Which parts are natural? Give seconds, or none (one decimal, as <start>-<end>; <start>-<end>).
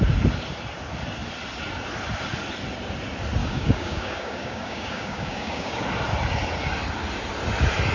0.0-3.4; 5.8-7.9